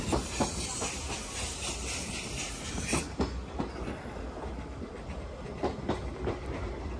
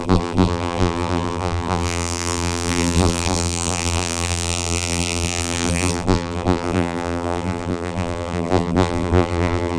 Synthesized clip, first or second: second